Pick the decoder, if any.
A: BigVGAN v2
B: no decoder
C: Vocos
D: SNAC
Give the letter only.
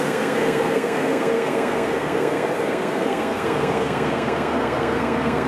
D